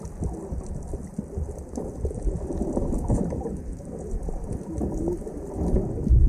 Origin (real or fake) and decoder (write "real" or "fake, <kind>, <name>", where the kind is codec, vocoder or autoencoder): real